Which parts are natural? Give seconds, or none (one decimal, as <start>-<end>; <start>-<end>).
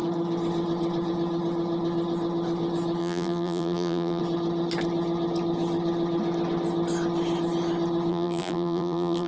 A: 0.0-3.0; 4.2-8.1